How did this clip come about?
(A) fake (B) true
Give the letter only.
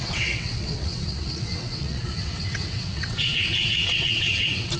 A